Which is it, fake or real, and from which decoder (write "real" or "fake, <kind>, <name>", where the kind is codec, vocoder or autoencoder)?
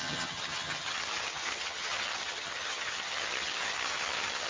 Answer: fake, vocoder, HiFi-GAN